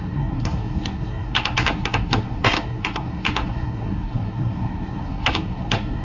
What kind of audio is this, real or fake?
fake